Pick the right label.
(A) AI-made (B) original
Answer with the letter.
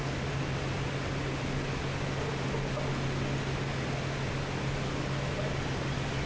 B